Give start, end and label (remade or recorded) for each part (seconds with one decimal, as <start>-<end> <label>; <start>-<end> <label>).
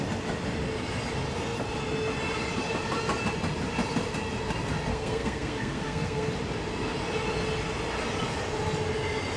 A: 0.0-4.9 recorded; 4.9-6.3 remade; 6.3-9.4 recorded